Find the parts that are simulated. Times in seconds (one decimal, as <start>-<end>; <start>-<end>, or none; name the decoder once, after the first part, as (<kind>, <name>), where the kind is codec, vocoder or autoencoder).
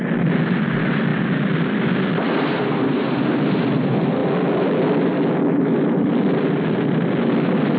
none